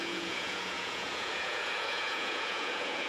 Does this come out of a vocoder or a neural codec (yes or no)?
yes